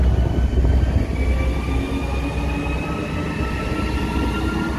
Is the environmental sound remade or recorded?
recorded